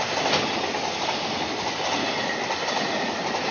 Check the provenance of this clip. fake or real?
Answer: real